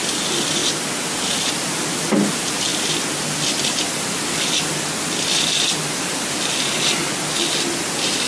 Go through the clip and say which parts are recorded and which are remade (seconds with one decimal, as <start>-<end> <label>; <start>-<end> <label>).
0.0-8.3 recorded